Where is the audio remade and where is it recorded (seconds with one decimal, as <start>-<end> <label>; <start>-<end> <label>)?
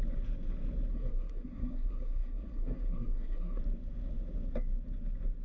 0.0-0.9 recorded; 0.9-3.6 remade; 3.6-5.4 recorded